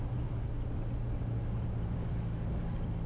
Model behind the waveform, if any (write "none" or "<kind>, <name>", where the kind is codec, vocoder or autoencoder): none